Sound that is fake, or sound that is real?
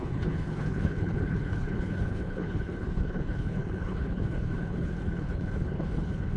fake